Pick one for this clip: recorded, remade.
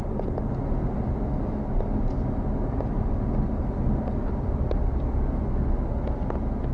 recorded